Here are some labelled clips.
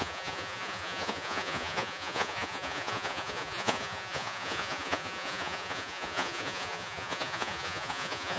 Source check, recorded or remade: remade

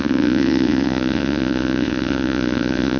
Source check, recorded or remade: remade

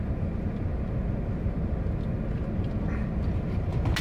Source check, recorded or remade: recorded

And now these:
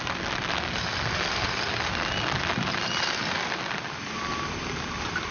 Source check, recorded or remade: recorded